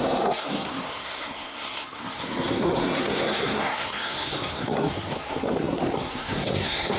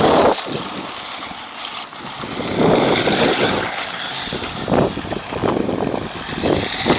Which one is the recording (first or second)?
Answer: second